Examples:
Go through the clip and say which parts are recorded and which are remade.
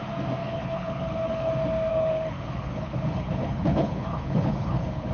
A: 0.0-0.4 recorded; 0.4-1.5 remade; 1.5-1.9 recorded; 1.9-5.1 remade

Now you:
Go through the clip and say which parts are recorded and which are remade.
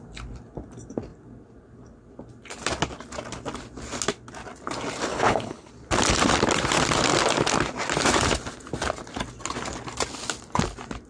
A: 0.0-5.1 recorded; 5.1-5.7 remade; 5.7-11.1 recorded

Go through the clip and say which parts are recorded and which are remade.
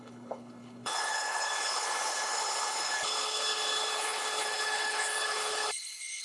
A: 0.0-6.2 remade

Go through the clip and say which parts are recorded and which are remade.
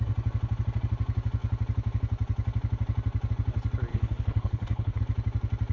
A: 0.0-3.9 recorded; 3.9-5.0 remade; 5.0-5.7 recorded